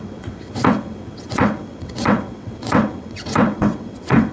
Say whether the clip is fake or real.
fake